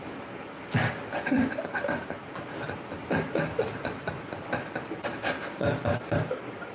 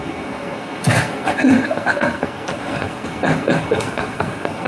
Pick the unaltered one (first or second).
first